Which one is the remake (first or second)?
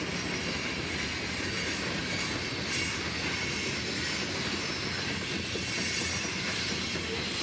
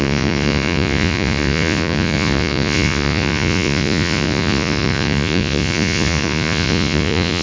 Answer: second